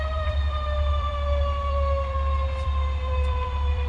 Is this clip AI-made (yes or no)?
yes